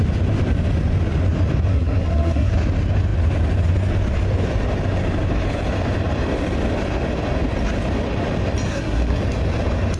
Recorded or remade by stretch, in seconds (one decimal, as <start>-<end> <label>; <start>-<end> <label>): 0.0-1.7 recorded; 1.7-2.5 remade; 2.5-8.7 recorded; 8.7-9.2 remade; 9.2-10.0 recorded